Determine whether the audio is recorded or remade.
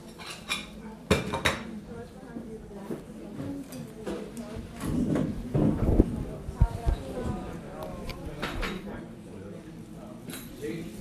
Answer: recorded